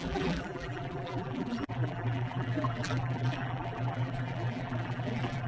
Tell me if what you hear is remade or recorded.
remade